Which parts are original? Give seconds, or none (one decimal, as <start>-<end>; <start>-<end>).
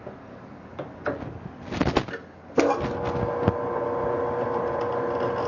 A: 0.7-4.0